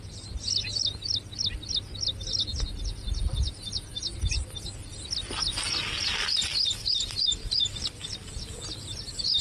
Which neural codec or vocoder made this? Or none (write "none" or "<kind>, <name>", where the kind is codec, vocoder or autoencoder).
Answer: none